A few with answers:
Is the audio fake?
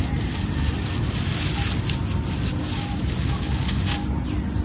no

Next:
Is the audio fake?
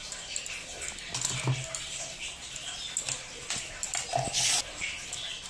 no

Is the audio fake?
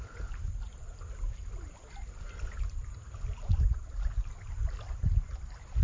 no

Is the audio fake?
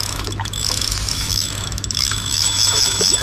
yes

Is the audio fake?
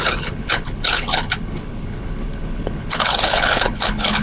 yes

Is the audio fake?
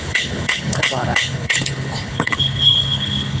yes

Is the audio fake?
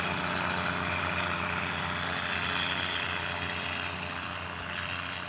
no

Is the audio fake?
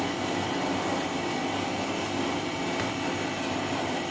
no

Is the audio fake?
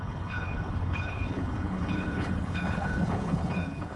yes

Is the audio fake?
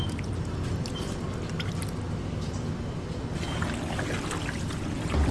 no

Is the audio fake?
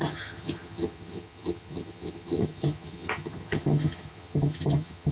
yes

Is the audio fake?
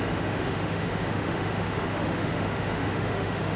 yes